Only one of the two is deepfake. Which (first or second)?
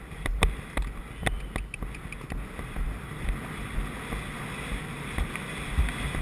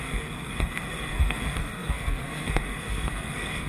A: second